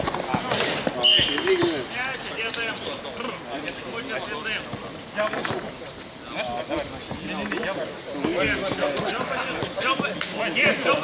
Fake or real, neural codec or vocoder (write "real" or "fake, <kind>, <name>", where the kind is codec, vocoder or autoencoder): real